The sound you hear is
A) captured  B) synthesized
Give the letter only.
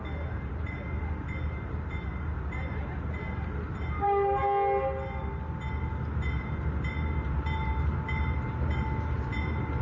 A